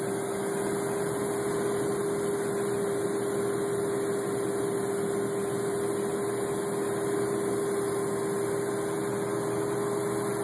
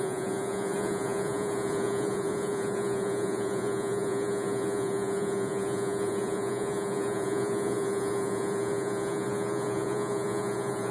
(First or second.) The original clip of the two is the first